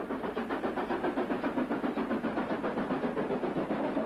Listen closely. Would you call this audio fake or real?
real